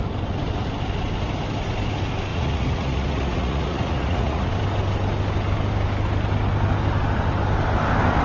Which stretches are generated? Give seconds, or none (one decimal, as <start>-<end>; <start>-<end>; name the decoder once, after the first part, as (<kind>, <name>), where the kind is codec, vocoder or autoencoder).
2.3-4.5 (vocoder, Vocos)